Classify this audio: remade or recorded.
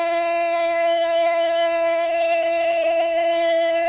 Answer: remade